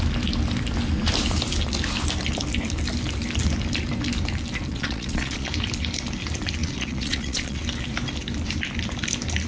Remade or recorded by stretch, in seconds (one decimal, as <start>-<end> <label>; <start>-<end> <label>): 0.0-4.7 recorded; 4.7-5.5 remade; 5.5-6.6 recorded; 6.6-7.6 remade; 7.6-9.5 recorded